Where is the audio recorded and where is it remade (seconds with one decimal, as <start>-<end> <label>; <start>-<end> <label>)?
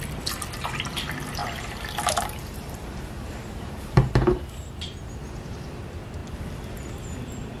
0.0-1.4 recorded; 1.4-5.3 remade; 5.3-7.6 recorded